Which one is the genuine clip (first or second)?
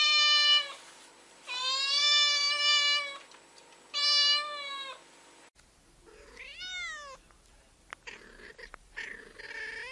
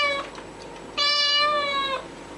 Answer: first